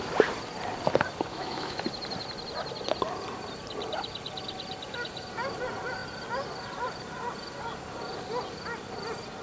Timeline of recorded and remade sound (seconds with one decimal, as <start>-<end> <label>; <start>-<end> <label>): 0.0-1.3 recorded; 1.3-1.8 remade; 1.8-9.4 recorded